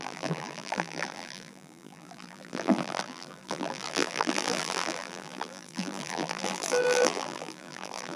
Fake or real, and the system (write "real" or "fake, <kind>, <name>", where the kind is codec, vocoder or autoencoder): fake, vocoder, BigVGAN v2